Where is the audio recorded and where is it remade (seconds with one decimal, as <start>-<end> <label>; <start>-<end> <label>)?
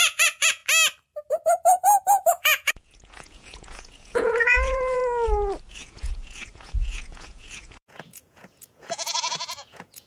0.0-0.6 remade; 0.6-2.3 recorded; 2.3-5.0 remade; 5.0-5.7 recorded; 5.7-10.1 remade